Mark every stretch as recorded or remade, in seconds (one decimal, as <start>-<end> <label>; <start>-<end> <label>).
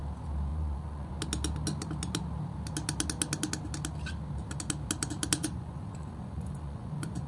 0.0-0.5 recorded; 0.5-1.1 remade; 1.1-5.4 recorded; 5.4-7.3 remade